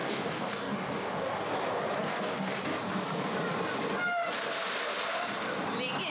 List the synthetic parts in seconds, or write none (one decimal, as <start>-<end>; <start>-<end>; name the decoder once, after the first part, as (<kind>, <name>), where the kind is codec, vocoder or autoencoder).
0.0-1.5 (codec, DAC); 2.0-2.6